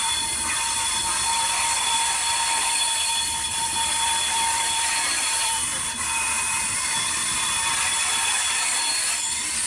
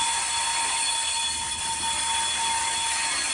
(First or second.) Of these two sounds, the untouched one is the second